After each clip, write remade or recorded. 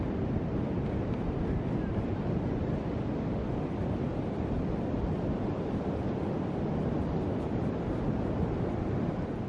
recorded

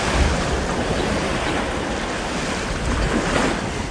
recorded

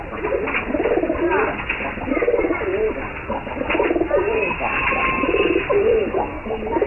recorded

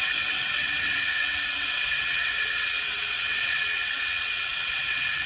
remade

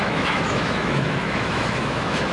remade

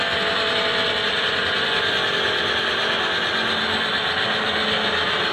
recorded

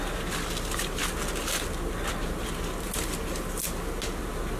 recorded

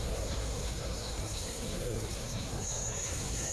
remade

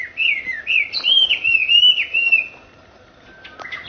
recorded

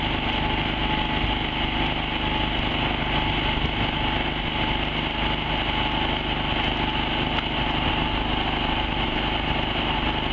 recorded